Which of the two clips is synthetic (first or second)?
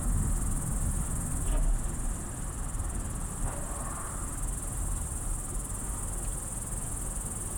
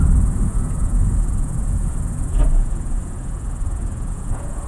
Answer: second